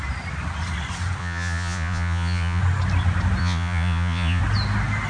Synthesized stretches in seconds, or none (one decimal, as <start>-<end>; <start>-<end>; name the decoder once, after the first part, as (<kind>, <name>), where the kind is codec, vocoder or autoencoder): 1.2-2.6 (vocoder, Vocos); 3.4-4.4